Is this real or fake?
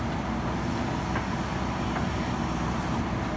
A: real